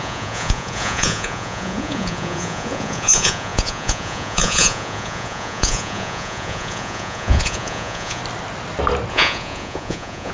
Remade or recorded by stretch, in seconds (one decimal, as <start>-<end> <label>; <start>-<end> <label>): 0.0-8.2 remade; 8.2-9.1 recorded; 9.1-10.3 remade